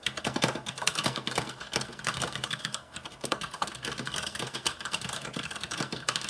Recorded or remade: remade